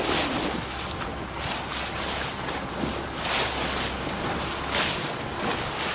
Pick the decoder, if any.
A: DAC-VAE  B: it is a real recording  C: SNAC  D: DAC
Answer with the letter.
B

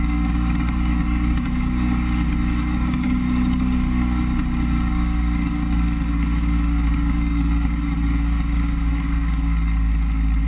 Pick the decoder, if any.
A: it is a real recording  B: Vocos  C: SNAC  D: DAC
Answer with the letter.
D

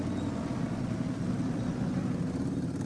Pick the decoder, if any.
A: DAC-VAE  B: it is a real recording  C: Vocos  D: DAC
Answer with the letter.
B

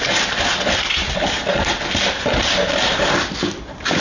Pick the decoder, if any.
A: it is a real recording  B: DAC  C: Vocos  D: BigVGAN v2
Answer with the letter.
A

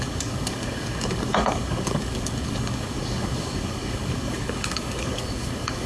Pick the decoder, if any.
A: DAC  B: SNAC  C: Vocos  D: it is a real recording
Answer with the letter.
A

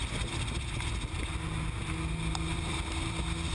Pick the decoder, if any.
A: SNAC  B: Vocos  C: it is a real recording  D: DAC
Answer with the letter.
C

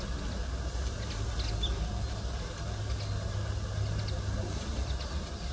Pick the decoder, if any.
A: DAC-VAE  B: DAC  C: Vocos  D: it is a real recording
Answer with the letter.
D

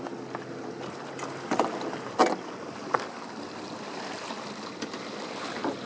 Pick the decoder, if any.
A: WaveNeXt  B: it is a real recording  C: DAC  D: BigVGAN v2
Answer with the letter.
B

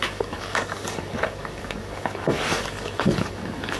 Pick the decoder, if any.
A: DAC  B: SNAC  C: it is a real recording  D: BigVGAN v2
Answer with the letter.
A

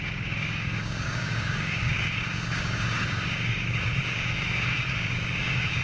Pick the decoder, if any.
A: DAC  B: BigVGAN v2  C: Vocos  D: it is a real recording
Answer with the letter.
A